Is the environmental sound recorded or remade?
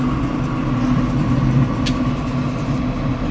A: recorded